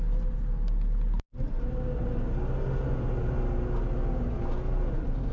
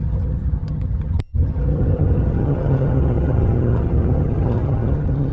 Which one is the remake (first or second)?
second